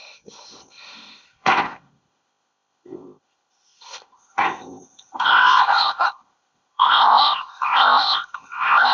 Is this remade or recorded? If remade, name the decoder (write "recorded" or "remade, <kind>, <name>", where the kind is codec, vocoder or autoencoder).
remade, codec, ZipCodec